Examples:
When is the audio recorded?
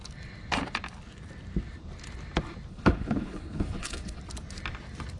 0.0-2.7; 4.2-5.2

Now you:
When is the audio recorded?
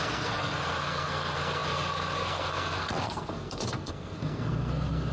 none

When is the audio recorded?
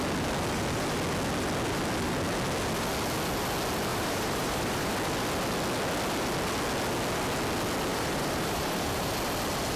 0.0-3.9; 4.9-7.9; 9.1-9.8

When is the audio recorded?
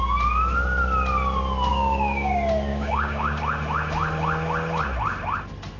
0.0-1.7; 2.3-2.7; 3.4-5.8